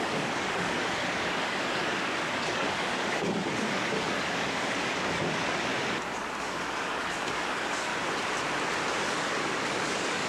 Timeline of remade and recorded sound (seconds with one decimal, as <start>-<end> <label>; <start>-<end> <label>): 0.0-5.7 remade; 5.7-6.4 recorded; 6.4-7.9 remade; 7.9-9.0 recorded; 9.0-10.3 remade